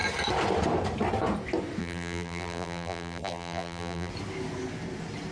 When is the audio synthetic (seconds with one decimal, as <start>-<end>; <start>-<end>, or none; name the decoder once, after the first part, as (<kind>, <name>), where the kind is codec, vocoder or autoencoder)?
1.8-4.1 (vocoder, BigVGAN v2)